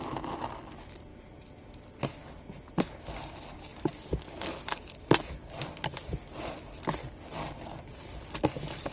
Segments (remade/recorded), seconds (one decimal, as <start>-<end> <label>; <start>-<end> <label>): 0.0-8.9 recorded